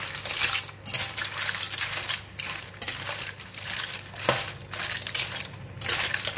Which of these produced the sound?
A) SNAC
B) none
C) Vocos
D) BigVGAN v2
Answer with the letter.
B